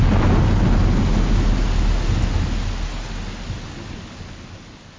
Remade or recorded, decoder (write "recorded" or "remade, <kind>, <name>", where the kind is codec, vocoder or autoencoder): recorded